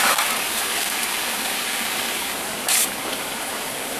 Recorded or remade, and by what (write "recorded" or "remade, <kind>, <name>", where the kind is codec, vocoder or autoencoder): remade, codec, DAC